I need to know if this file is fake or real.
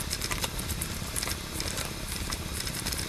fake